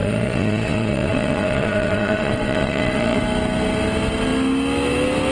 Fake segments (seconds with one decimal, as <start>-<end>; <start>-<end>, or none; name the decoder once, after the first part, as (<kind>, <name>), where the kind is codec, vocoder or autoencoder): 0.0-3.2 (vocoder, Vocos)

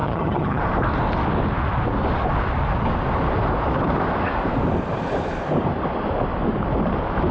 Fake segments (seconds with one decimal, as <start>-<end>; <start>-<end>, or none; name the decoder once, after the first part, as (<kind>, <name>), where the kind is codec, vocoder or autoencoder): 0.0-0.6 (vocoder, HiFi-GAN)

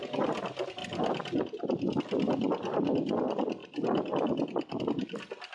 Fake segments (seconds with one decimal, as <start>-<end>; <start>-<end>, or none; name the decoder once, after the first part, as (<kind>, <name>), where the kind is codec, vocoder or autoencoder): none

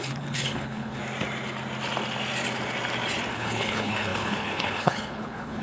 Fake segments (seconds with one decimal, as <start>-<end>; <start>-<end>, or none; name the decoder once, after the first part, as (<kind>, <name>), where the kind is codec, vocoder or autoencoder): 0.0-1.0 (codec, HILCodec); 3.3-5.6

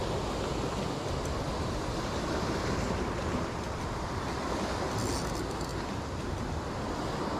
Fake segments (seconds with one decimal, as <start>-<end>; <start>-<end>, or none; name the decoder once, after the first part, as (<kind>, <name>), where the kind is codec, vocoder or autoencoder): none